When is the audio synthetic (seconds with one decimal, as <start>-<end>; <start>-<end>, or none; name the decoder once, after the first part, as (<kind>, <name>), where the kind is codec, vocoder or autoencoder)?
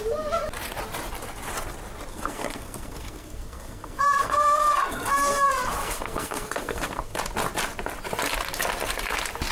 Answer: 2.1-7.2 (codec, SNAC)